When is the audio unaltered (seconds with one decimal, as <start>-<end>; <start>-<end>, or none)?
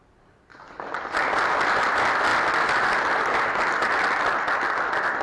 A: 0.0-5.2